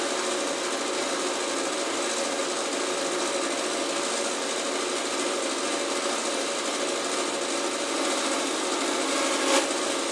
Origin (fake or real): real